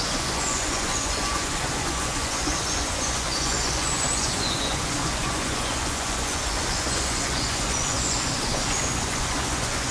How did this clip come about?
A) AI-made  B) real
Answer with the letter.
A